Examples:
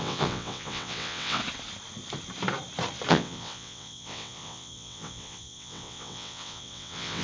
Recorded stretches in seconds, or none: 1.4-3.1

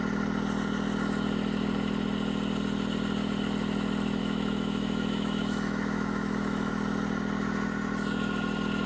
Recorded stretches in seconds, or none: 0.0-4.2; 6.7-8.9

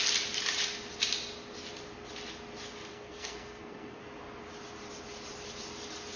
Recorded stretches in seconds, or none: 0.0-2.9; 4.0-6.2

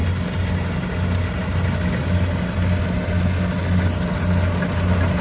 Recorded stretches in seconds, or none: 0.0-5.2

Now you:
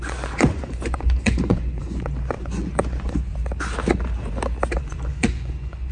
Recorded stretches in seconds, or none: 3.3-4.8

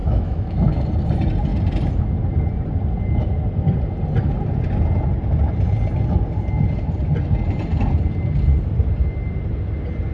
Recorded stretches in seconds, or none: 0.9-10.1

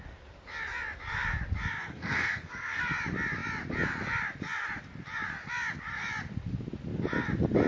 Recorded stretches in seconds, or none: 0.0-1.8; 2.8-7.7

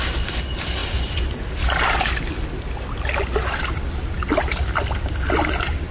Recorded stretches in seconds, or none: 0.0-5.9